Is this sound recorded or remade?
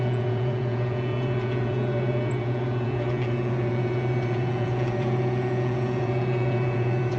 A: remade